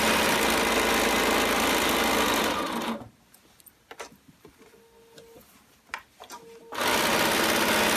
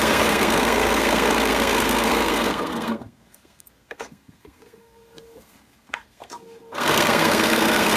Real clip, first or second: first